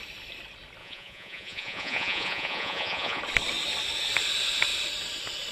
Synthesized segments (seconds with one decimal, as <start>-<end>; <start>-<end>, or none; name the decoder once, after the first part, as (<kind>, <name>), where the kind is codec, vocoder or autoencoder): 0.8-3.2 (vocoder, Vocos)